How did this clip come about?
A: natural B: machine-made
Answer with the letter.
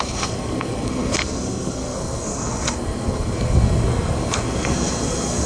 B